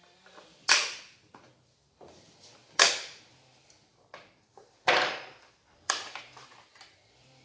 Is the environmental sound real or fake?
fake